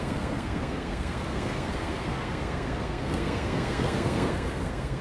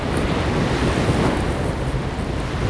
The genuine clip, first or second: second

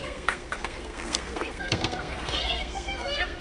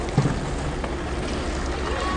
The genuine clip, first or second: second